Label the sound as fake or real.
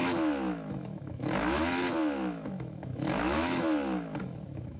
fake